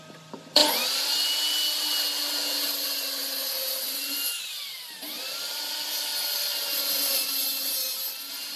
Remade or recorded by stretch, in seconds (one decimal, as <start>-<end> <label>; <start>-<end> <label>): 0.0-0.6 remade; 0.6-3.9 recorded; 3.9-6.1 remade; 6.1-8.6 recorded